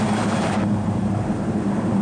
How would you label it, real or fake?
fake